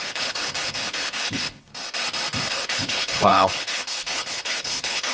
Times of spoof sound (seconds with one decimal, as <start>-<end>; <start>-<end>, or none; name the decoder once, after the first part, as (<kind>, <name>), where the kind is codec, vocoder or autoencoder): 0.0-1.7 (codec, HILCodec); 2.5-5.1